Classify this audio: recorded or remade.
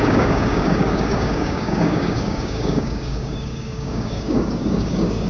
remade